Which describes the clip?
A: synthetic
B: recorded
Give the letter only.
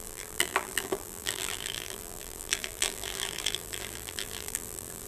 A